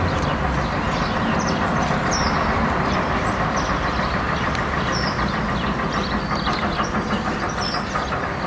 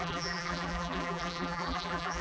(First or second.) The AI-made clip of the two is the second